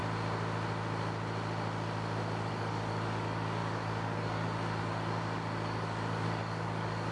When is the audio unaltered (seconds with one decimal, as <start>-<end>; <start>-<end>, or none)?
0.0-2.5

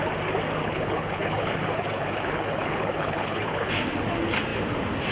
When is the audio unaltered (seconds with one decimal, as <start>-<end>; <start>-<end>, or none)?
0.0-0.6; 3.7-5.1

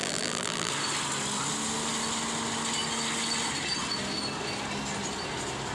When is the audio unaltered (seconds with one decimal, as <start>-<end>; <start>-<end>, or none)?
0.7-5.7

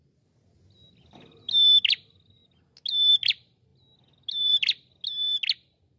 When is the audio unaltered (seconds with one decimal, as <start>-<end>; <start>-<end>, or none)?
0.0-6.0

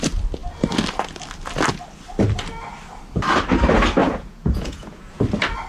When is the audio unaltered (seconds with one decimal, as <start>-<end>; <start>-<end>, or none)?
0.0-4.0; 5.2-5.7